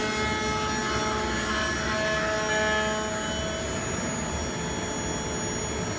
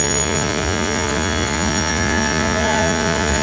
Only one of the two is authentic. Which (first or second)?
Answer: first